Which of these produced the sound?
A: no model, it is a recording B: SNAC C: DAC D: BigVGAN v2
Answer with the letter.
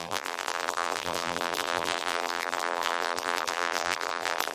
D